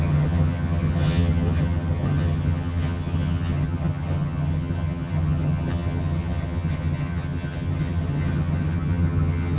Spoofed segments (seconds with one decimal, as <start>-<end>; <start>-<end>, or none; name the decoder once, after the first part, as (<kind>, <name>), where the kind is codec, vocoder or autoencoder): 0.0-9.6 (vocoder, HiFi-GAN)